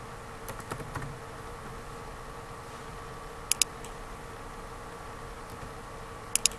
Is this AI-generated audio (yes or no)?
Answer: no